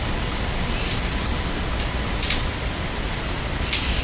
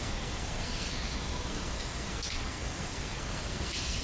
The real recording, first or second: first